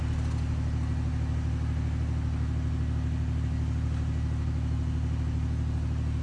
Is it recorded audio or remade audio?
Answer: recorded